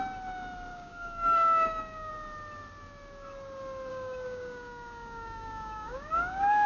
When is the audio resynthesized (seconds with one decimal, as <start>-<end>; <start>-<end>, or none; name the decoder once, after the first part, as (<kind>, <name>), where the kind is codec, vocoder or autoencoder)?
0.7-2.1 (codec, DAC); 3.9-6.7